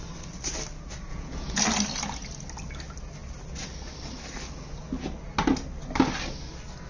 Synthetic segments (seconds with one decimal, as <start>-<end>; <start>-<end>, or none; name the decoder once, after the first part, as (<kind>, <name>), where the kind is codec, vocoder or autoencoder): 1.1-1.6 (vocoder, Vocos)